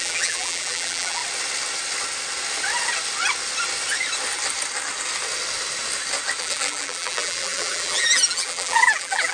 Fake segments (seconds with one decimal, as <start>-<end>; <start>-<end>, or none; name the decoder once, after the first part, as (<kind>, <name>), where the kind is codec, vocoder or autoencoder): 0.0-1.2 (vocoder, BigVGAN v2); 6.4-9.3